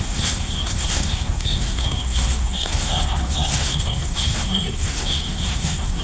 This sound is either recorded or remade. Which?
remade